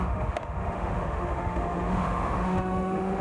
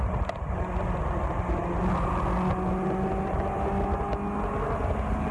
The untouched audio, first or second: second